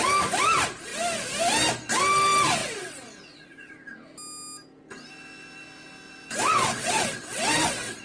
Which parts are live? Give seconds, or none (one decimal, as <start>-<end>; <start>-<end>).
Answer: 0.0-2.6; 3.7-6.5